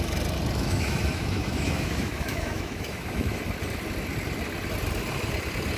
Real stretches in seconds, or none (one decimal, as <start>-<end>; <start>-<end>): 0.0-0.6; 3.4-5.8